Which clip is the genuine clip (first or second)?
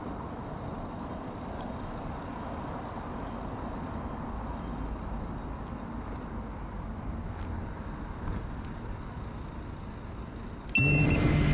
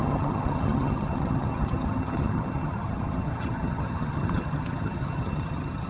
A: first